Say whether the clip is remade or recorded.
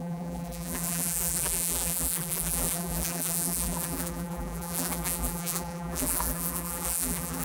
remade